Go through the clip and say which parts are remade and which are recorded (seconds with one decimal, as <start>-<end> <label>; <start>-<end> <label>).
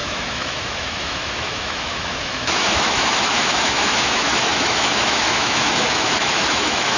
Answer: 0.0-7.0 remade